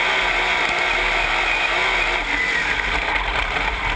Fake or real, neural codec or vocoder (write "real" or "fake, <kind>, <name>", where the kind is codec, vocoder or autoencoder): real